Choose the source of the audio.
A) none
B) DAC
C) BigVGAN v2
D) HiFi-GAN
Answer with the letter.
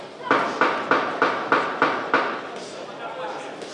A